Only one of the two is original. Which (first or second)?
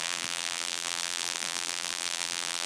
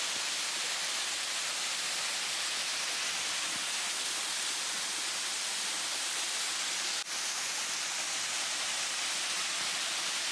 second